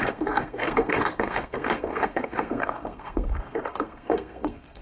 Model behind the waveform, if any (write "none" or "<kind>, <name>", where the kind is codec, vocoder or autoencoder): codec, SNAC